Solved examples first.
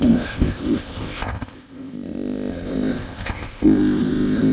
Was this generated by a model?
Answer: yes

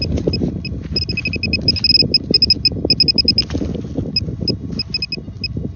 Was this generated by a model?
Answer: no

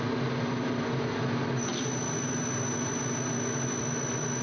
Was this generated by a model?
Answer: no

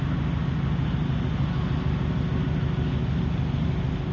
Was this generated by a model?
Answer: no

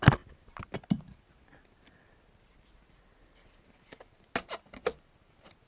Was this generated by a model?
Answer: no